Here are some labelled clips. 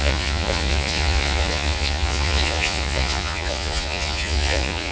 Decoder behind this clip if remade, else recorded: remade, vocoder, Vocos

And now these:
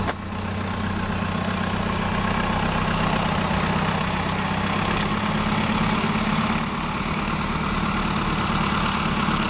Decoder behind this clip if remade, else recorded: recorded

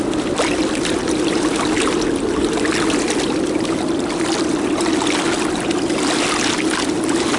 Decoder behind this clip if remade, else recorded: recorded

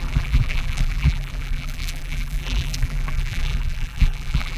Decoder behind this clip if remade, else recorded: remade, vocoder, BigVGAN v2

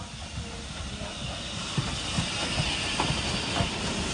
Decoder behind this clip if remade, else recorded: recorded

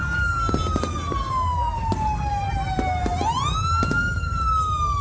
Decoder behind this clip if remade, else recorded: recorded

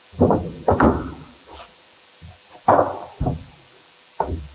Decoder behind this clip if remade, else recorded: remade, vocoder, BigVGAN v2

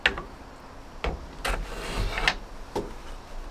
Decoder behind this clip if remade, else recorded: recorded